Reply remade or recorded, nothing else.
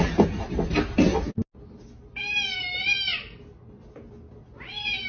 recorded